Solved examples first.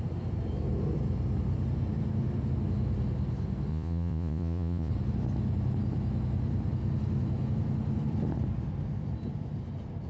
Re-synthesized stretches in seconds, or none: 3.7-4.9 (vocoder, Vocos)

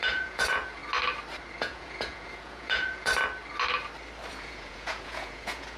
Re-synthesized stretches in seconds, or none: 0.0-0.8 (vocoder, Vocos); 1.6-3.1; 4.3-5.8

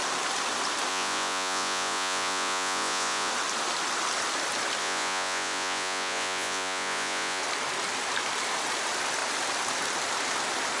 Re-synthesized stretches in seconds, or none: 0.9-3.3 (vocoder, Vocos); 4.8-7.4

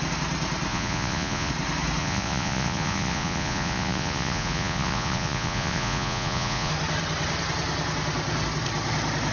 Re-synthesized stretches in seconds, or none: 0.7-1.5 (vocoder, Vocos); 2.0-6.7

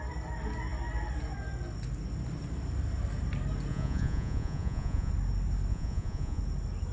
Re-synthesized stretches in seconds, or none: 3.7-5.1 (vocoder, Vocos); 5.7-6.4

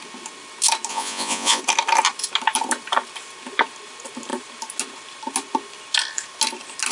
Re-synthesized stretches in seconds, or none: 0.9-1.6 (vocoder, Vocos)